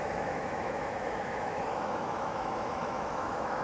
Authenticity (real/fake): fake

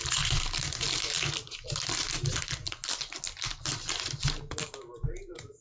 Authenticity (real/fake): real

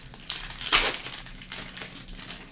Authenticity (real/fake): real